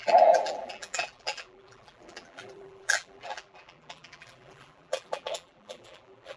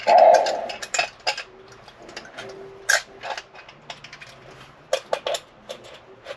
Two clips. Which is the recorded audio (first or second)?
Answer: second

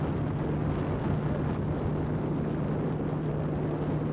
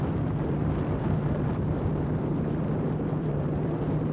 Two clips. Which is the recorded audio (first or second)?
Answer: first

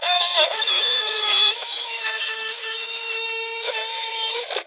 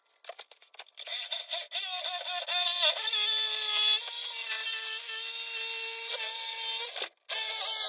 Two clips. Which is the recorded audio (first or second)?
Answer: second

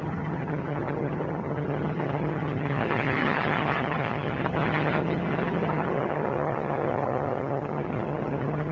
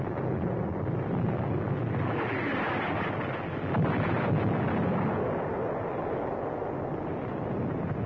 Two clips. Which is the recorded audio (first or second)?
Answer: second